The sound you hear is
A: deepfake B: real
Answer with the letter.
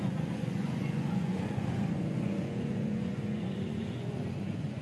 A